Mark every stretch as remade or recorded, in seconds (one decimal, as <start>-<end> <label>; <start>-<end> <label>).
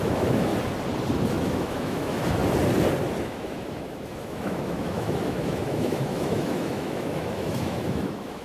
0.0-0.5 remade; 0.5-1.3 recorded; 1.3-2.4 remade; 2.4-3.2 recorded; 3.2-8.4 remade